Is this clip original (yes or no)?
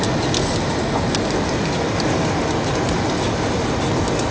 yes